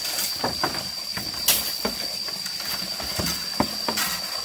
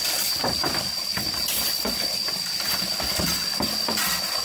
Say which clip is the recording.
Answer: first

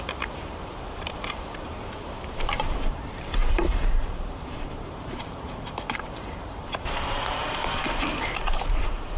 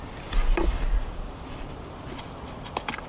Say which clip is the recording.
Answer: second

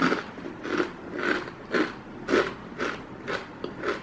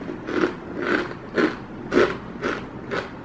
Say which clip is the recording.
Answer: second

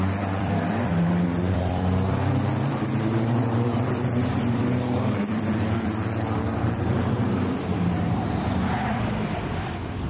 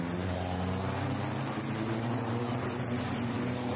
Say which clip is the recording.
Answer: second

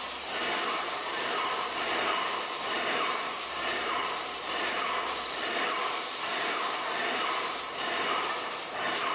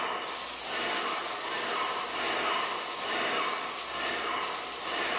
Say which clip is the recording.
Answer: second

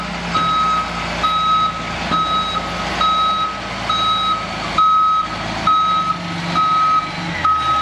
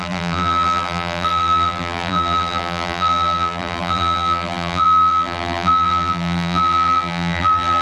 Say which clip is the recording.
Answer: first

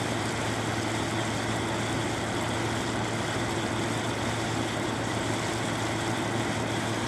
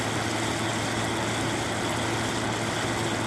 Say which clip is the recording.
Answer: second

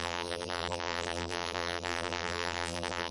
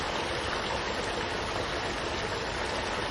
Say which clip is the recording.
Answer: second